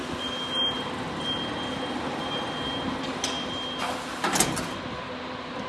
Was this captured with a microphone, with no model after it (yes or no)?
yes